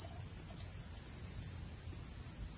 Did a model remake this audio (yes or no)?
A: no